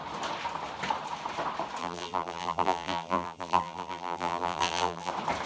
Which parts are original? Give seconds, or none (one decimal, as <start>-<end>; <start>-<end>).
0.0-1.8; 5.1-5.5